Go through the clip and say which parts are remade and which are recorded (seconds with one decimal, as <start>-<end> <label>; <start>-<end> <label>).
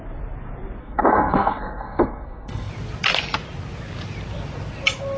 0.0-0.8 recorded; 0.8-2.7 remade; 2.7-5.2 recorded